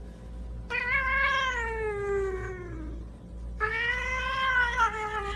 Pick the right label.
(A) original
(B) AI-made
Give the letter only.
A